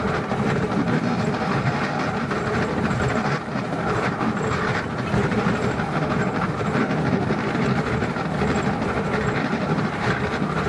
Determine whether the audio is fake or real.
fake